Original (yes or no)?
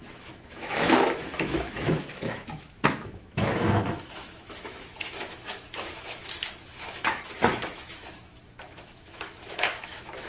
no